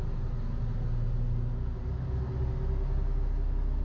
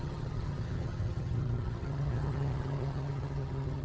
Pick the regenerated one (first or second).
second